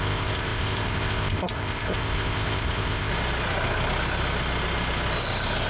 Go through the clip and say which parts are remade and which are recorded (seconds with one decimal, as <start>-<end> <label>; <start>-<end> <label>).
0.0-3.1 remade; 3.1-5.7 recorded